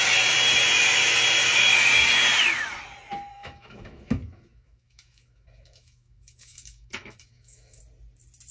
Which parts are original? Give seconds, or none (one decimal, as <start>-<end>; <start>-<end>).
0.0-3.3; 7.8-8.5